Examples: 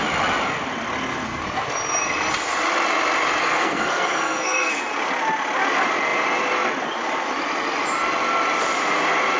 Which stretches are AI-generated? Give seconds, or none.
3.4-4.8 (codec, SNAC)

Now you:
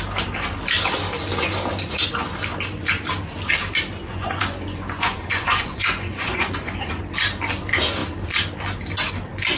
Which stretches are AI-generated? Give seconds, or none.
4.0-7.0 (vocoder, Vocos)

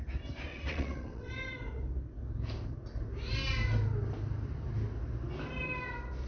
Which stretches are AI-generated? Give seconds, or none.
0.5-1.3 (vocoder, WaveNeXt)

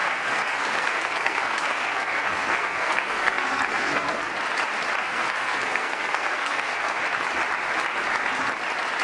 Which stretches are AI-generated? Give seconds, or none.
0.0-4.3 (codec, SNAC); 5.0-7.0

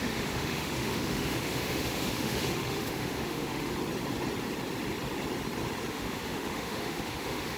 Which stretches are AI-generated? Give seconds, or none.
0.0-3.7 (autoencoder, DAC-VAE); 5.9-7.6

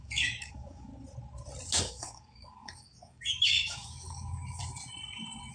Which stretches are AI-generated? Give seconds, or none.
0.0-0.9 (codec, DAC); 1.8-4.6

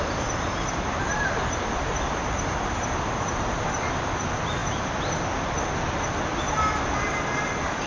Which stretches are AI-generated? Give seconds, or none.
none

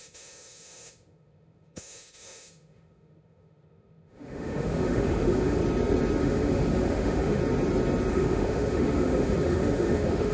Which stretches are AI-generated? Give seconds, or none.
0.0-5.6 (autoencoder, DAC-VAE); 6.2-7.4; 8.1-10.3